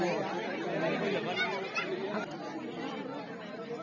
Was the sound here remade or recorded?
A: recorded